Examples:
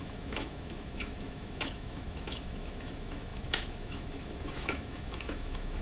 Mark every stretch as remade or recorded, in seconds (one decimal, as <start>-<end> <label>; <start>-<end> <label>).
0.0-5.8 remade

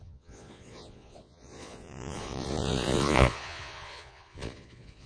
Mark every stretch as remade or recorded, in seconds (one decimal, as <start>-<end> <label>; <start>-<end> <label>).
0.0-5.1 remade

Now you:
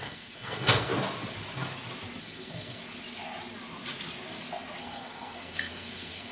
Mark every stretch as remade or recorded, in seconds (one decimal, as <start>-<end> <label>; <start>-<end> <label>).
0.0-0.9 remade; 0.9-2.2 recorded; 2.2-2.8 remade; 2.8-4.8 recorded; 4.8-6.3 remade

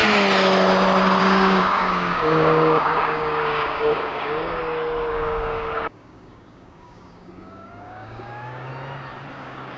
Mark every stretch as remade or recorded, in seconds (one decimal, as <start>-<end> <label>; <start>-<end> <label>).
0.0-1.2 recorded; 1.2-4.6 remade; 4.6-5.1 recorded; 5.1-8.7 remade; 8.7-9.4 recorded; 9.4-9.8 remade